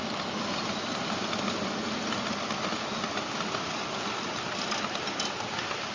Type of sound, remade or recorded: recorded